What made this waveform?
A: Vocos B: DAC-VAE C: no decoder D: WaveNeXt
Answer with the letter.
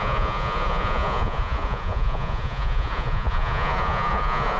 A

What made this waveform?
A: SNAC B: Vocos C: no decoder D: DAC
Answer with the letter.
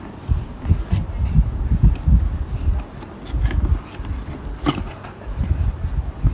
C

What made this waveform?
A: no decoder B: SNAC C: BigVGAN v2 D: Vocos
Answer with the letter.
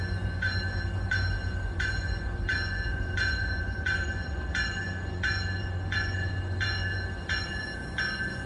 D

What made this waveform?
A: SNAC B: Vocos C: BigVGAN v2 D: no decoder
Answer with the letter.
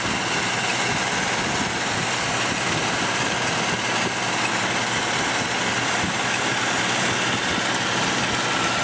D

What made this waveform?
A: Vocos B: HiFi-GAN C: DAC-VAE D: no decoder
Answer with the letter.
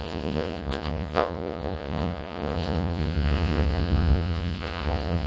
A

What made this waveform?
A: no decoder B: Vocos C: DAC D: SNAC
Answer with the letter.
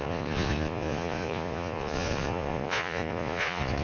B